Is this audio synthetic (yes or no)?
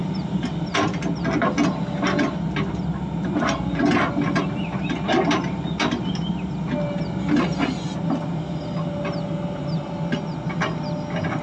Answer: no